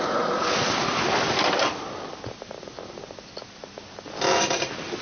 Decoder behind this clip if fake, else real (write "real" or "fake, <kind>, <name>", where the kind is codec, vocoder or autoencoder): real